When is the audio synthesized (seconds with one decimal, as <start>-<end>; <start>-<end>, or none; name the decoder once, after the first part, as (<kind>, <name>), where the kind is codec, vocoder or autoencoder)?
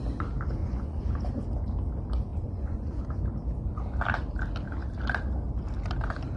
0.6-1.2 (vocoder, Vocos); 2.3-3.0